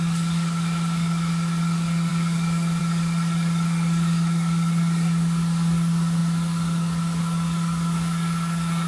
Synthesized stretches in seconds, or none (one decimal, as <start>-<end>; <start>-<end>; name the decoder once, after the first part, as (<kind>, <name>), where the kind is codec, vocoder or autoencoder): 0.0-8.9 (codec, DAC)

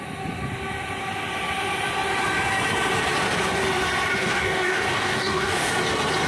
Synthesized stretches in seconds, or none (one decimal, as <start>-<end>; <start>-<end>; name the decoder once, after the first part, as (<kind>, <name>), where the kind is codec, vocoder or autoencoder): 4.2-5.7 (codec, DAC)

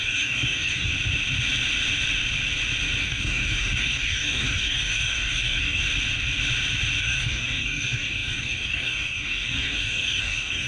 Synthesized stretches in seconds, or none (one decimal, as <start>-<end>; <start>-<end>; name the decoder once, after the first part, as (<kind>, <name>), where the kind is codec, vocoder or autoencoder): 0.0-0.9 (codec, DAC); 3.0-5.8; 7.0-10.7